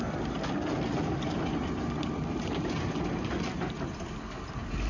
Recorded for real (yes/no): yes